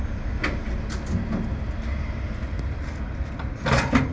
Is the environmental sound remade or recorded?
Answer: recorded